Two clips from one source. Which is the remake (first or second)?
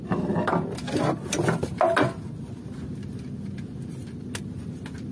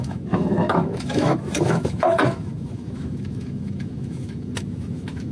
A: second